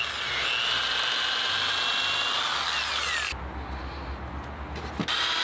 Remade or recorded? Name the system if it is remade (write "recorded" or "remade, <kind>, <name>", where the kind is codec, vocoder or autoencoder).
recorded